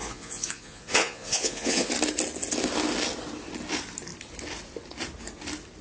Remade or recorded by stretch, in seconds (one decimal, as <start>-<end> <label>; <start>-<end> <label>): 0.0-1.9 remade; 1.9-5.8 recorded